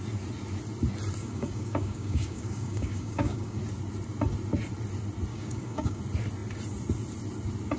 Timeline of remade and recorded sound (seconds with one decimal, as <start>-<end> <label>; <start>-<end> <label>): 0.0-1.2 recorded; 1.2-3.6 remade; 3.6-5.3 recorded; 5.3-6.0 remade; 6.0-7.8 recorded